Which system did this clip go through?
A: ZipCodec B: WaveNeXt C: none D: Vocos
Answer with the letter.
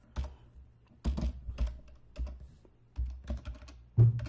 C